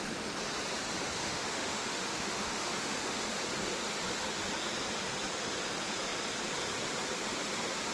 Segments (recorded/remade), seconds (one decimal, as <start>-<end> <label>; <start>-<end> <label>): 0.0-1.2 recorded; 1.2-3.2 remade; 3.2-7.9 recorded